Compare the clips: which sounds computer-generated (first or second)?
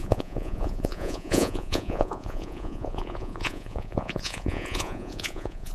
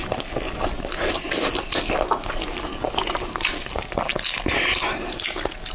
first